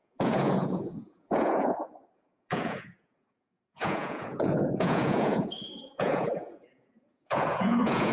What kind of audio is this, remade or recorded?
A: remade